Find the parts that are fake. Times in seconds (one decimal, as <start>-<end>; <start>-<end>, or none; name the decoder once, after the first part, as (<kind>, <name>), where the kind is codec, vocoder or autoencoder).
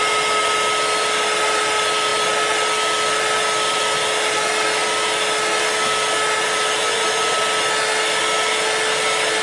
none